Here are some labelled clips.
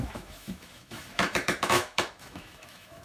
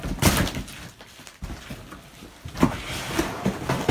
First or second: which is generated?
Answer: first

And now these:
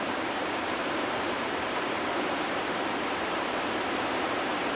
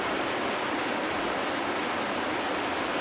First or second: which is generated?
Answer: first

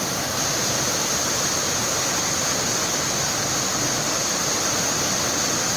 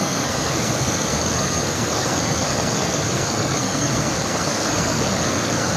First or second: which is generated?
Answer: second